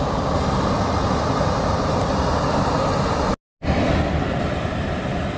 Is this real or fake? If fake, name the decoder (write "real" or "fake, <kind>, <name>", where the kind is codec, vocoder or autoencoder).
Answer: real